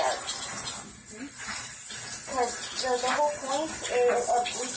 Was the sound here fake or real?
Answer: real